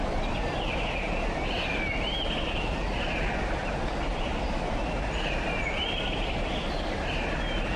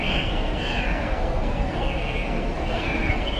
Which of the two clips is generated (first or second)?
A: second